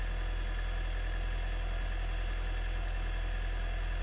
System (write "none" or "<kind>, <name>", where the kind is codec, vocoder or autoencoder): none